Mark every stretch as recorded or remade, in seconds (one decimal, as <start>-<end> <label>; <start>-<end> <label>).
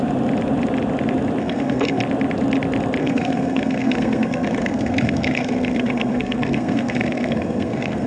0.0-1.4 recorded; 1.4-2.0 remade; 2.0-3.0 recorded; 3.0-8.1 remade